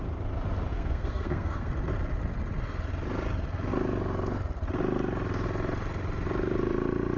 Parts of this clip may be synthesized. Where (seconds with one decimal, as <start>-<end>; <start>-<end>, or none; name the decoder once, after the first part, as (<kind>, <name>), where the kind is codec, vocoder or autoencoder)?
0.7-1.7 (codec, SNAC)